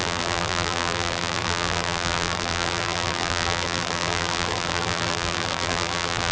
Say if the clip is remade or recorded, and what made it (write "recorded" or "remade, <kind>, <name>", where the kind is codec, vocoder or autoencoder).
remade, vocoder, BigVGAN v2